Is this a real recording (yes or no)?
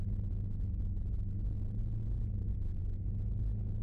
yes